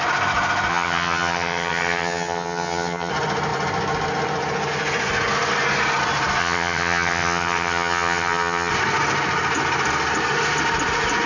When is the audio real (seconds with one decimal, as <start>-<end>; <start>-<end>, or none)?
0.0-0.7; 3.1-6.4; 8.7-11.3